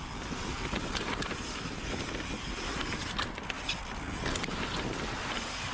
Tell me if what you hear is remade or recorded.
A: recorded